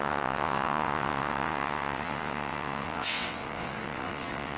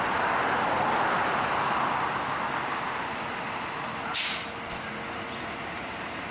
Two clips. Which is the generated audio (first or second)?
first